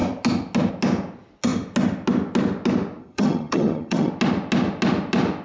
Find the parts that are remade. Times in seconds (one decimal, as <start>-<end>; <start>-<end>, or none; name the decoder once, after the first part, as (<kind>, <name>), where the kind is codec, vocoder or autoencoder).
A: 3.0-4.1 (vocoder, HiFi-GAN)